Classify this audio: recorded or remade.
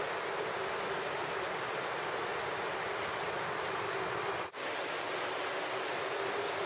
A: recorded